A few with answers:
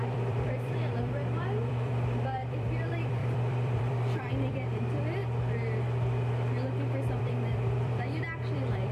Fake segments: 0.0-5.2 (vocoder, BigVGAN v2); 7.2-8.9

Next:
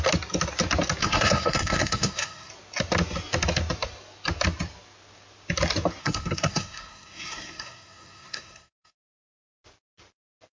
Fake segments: 1.0-2.5 (codec, SNAC); 6.0-9.5

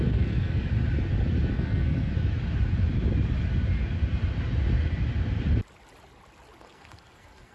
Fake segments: 0.0-0.7 (codec, SNAC); 1.5-2.1; 6.6-7.5

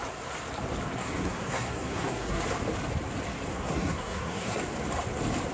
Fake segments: 1.0-2.4 (codec, SNAC); 3.5-4.6

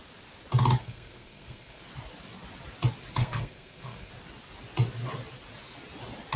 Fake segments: 0.8-1.8 (codec, SNAC); 3.2-4.1

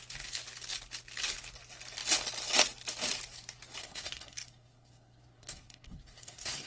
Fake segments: 3.8-6.7 (codec, SNAC)

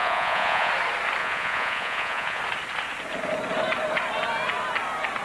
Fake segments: 0.0-0.7 (vocoder, Vocos); 1.2-2.4